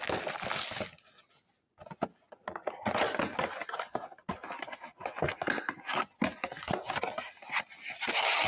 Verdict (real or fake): real